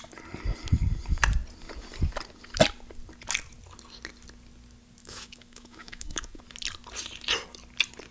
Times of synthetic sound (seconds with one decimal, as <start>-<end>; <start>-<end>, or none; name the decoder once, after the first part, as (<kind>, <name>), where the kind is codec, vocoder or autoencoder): 5.0-6.4 (autoencoder, DAC-VAE)